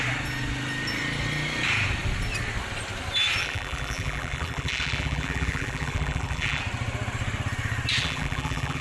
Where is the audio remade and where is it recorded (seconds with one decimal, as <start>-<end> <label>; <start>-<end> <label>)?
0.0-3.4 recorded; 3.4-6.6 remade; 6.6-8.0 recorded; 8.0-8.8 remade